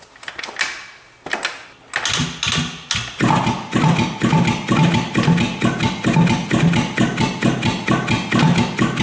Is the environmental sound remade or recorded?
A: recorded